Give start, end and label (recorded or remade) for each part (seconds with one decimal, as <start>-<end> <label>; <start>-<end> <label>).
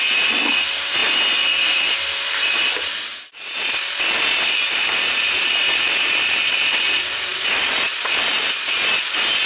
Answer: 0.0-9.5 recorded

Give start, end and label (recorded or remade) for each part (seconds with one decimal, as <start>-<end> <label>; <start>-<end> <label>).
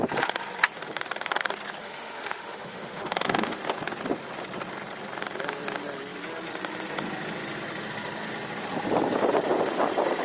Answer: 0.0-1.8 recorded; 1.8-3.6 remade; 3.6-10.2 recorded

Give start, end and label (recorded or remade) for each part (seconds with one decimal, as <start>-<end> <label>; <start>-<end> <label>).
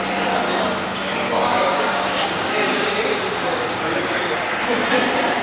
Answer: 0.0-1.1 recorded; 1.1-4.3 remade; 4.3-5.4 recorded